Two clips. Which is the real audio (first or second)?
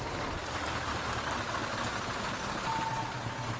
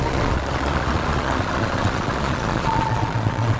first